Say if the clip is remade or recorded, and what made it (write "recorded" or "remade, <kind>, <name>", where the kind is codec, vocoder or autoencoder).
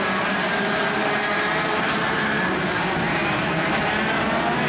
remade, vocoder, BigVGAN v2